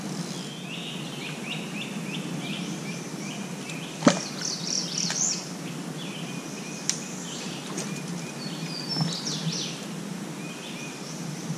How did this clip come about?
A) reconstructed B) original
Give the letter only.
B